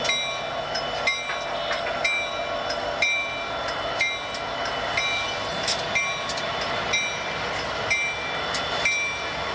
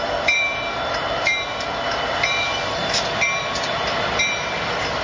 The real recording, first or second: first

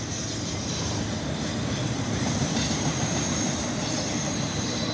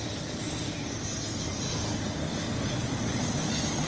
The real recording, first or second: second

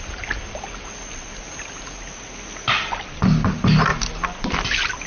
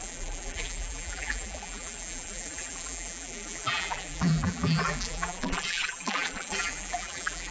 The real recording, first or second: first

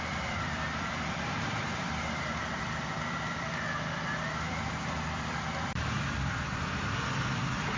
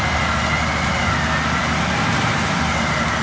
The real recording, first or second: second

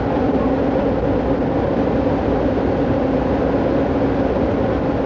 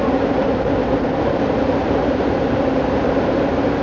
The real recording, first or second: first